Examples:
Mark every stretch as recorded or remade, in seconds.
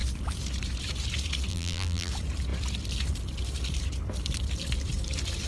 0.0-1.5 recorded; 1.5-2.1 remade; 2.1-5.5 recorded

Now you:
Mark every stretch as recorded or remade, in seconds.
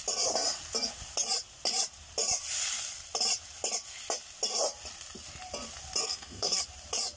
0.0-6.0 recorded; 6.0-6.6 remade; 6.6-7.2 recorded